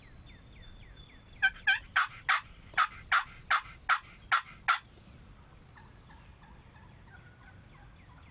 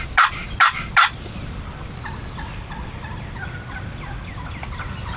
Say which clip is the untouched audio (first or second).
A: first